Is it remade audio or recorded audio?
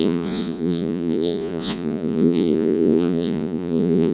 remade